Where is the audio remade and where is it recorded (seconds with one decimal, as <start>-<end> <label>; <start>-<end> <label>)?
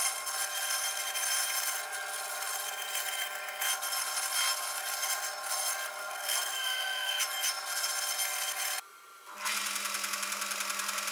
0.0-6.0 recorded; 6.0-7.2 remade; 7.2-11.1 recorded